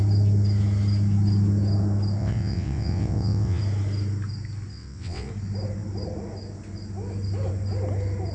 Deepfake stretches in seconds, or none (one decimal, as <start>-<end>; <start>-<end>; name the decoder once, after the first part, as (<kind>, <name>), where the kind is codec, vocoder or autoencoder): 2.2-3.6 (vocoder, WaveNeXt); 4.7-5.3